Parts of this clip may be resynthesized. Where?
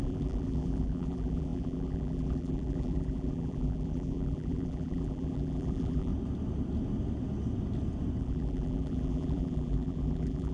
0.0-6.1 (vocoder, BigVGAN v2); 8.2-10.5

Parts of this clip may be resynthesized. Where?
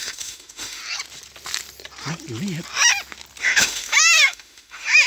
0.0-0.8 (autoencoder, DAC-VAE); 3.4-5.1